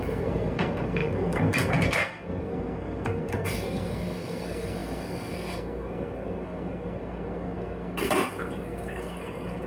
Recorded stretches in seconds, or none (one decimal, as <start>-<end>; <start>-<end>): none